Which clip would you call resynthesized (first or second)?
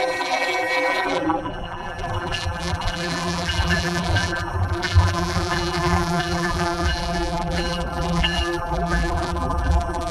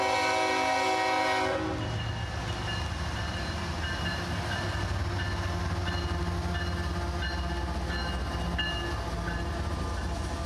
first